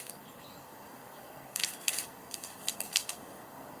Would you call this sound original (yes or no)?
no